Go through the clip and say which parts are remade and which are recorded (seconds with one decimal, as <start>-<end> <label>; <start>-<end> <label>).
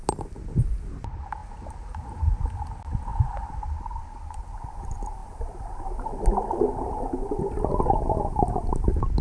0.0-9.2 recorded